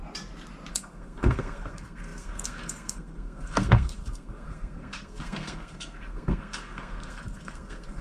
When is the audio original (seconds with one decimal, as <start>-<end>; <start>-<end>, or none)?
0.0-0.7